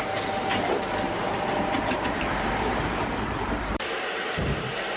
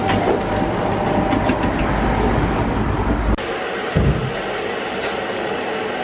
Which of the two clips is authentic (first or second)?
second